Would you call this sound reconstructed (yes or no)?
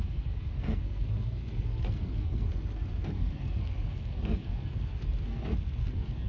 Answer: yes